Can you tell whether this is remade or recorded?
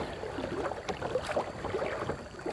remade